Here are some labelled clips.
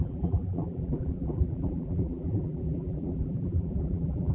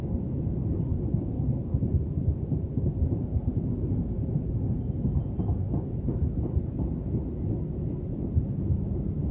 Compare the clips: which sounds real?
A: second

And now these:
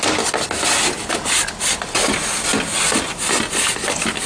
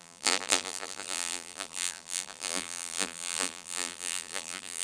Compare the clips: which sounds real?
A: first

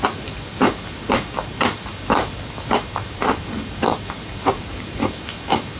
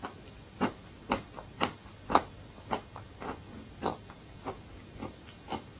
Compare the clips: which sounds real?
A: second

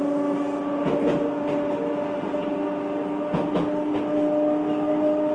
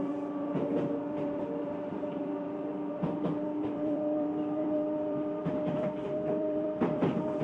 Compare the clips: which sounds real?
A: first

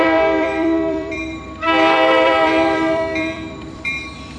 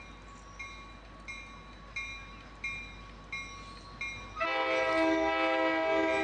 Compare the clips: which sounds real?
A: second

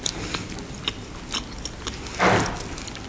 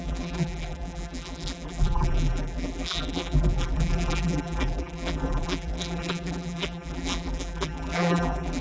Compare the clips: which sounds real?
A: first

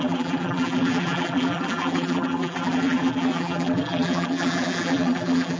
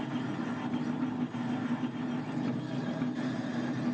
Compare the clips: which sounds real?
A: second